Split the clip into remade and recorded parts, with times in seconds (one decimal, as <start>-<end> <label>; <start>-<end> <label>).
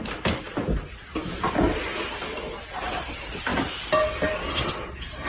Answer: 0.0-5.3 recorded